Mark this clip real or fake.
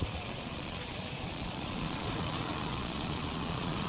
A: fake